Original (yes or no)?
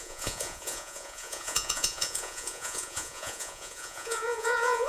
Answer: no